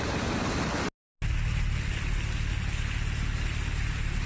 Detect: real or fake real